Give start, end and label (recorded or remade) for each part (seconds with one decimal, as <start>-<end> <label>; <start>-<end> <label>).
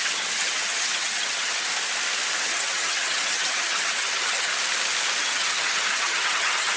0.0-1.7 remade; 1.7-2.4 recorded; 2.4-4.5 remade; 4.5-5.2 recorded; 5.2-6.8 remade